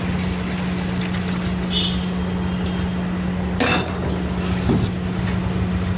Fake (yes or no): no